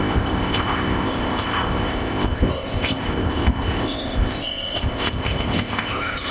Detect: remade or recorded remade